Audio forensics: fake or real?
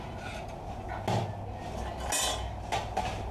real